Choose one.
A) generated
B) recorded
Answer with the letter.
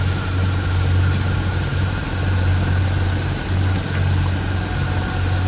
B